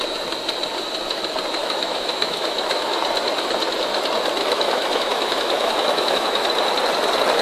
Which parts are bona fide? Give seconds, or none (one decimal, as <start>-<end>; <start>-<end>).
0.0-1.6; 3.0-4.4; 6.5-7.4